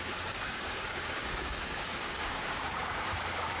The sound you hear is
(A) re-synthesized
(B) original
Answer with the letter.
A